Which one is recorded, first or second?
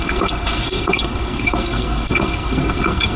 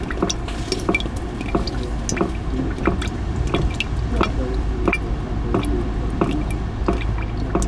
second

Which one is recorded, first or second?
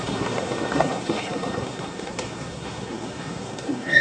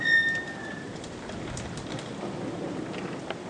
second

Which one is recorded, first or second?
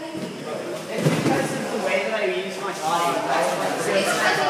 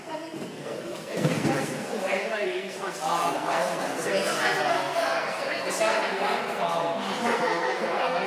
first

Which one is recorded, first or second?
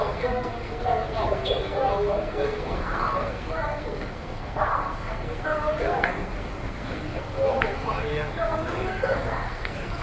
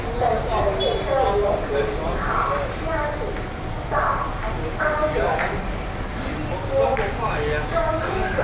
second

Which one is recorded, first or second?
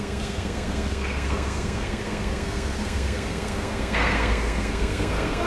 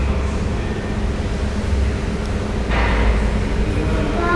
second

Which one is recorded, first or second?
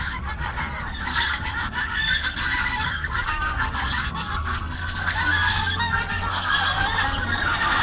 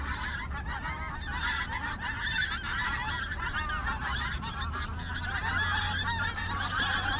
second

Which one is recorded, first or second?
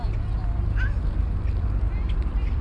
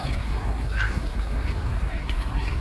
first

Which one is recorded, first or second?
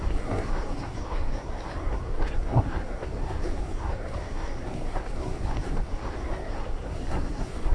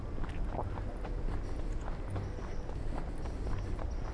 second